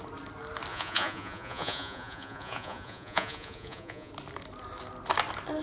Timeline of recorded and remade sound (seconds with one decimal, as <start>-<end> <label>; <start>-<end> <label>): 0.0-0.7 recorded; 0.7-4.1 remade; 4.1-5.6 recorded